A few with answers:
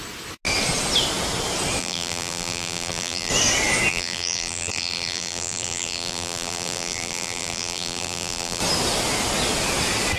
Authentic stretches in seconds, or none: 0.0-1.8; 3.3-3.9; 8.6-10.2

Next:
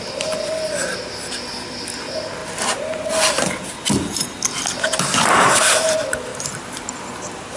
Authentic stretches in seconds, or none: 0.0-2.4; 3.1-6.3

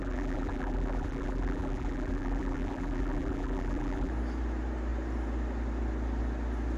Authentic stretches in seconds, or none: 4.1-6.8

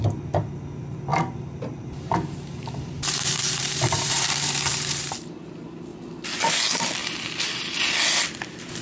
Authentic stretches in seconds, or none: 0.0-1.1; 5.1-7.0; 7.8-8.8